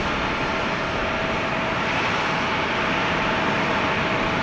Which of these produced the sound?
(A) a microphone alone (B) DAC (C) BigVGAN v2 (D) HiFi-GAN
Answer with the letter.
A